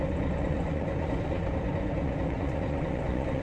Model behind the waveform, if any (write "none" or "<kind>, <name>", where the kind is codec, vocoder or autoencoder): vocoder, Vocos